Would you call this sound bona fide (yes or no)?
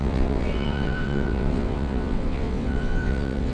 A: no